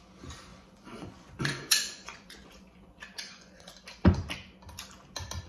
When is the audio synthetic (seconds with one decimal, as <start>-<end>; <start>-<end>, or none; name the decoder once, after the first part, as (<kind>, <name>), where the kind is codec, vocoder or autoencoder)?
0.5-3.8 (vocoder, Vocos)